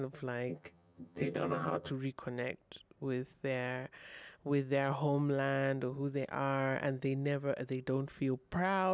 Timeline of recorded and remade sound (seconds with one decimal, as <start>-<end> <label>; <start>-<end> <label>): 0.0-0.5 recorded; 0.5-1.9 remade; 1.9-8.9 recorded